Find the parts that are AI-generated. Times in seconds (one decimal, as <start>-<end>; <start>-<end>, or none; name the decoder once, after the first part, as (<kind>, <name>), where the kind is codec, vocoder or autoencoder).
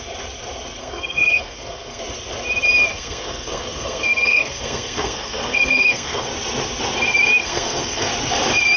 0.8-2.0 (codec, SNAC); 2.9-6.3; 7.4-8.1